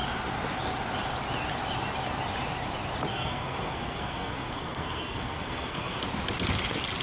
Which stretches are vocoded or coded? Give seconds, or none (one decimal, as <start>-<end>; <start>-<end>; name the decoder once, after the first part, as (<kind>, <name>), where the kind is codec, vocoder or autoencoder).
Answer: 3.1-6.0 (codec, SNAC)